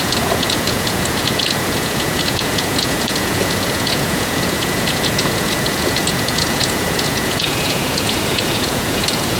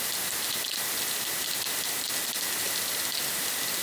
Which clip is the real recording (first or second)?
second